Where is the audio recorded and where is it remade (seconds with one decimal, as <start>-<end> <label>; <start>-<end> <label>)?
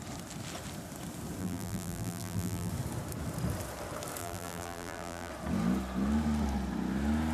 0.0-1.4 recorded; 1.4-2.7 remade; 2.7-4.2 recorded; 4.2-5.3 remade; 5.3-7.3 recorded